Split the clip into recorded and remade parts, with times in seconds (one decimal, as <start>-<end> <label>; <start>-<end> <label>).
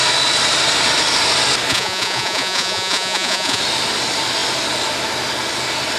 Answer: 0.0-1.7 recorded; 1.7-3.6 remade; 3.6-6.0 recorded